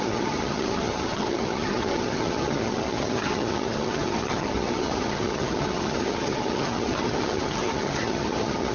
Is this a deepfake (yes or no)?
yes